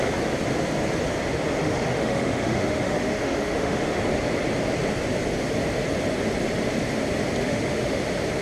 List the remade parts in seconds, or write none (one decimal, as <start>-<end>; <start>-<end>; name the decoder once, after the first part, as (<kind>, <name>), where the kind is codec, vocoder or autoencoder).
1.6-4.0 (autoencoder, DAC-VAE); 7.4-8.0